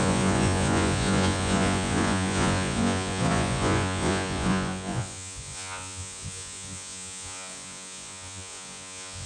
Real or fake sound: fake